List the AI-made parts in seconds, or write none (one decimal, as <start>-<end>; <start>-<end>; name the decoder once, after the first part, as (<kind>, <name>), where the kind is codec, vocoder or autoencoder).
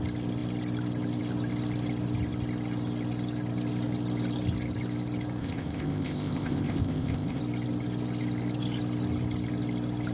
5.4-7.4 (codec, ZipCodec)